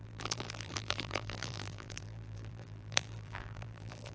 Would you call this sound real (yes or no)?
no